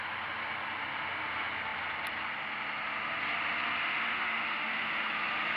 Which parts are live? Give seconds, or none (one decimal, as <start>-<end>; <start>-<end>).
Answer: 0.0-3.8; 5.1-5.6